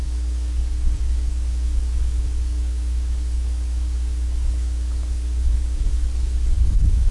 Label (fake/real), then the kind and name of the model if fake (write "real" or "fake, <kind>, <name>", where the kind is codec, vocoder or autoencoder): fake, codec, DAC